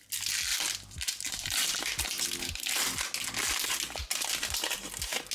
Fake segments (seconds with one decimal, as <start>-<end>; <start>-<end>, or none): 0.5-2.6; 4.0-4.8